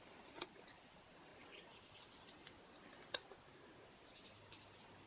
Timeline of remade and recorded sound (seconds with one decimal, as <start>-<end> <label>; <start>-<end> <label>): 0.0-5.1 recorded

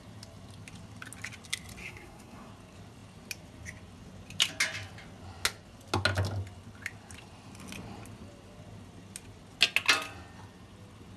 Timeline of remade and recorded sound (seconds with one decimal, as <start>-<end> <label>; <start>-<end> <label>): 0.0-1.8 recorded; 1.8-2.5 remade; 2.5-11.2 recorded

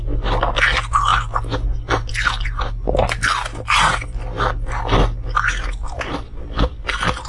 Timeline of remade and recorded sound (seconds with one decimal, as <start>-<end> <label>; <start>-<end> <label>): 0.0-7.3 recorded

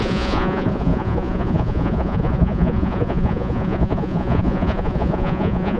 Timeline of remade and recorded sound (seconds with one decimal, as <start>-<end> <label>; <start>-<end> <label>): 0.0-5.8 remade